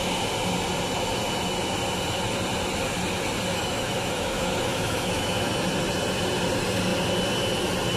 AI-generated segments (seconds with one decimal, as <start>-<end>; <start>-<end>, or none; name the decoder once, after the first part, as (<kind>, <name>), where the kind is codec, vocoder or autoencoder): 3.5-5.5 (autoencoder, DAC-VAE)